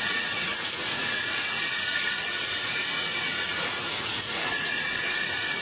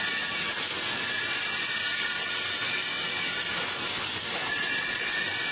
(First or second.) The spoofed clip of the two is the first